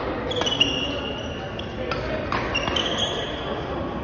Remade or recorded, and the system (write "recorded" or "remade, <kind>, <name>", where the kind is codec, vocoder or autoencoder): recorded